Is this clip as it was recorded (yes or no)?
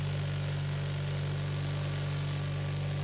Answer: yes